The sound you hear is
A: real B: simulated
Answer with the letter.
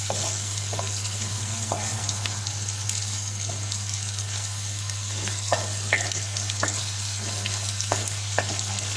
B